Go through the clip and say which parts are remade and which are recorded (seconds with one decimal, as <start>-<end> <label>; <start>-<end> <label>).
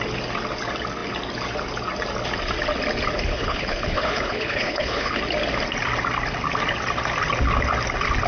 0.0-3.3 recorded; 3.3-5.2 remade; 5.2-8.3 recorded